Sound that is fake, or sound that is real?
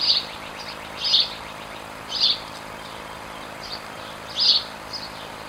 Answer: real